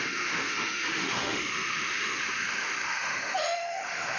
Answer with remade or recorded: remade